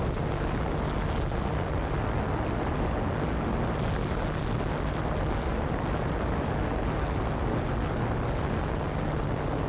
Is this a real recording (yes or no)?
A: yes